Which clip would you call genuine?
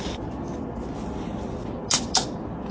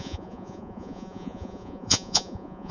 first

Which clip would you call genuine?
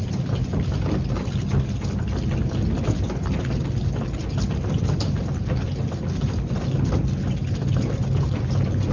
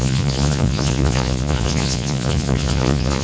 first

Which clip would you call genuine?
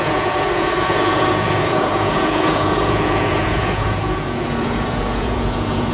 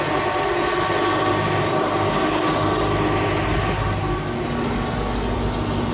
second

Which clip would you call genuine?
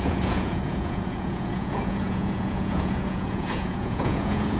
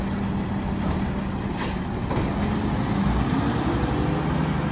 second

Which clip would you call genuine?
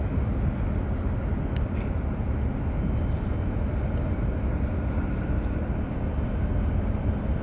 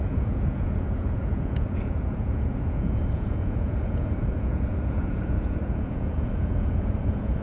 first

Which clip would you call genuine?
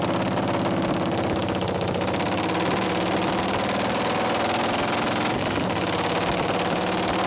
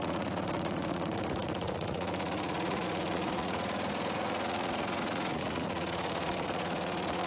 first